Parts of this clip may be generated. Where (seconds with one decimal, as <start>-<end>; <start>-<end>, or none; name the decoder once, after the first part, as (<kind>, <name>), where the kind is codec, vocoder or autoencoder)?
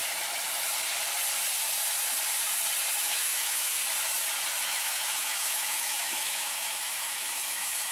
3.0-3.8 (autoencoder, DAC-VAE); 4.6-7.9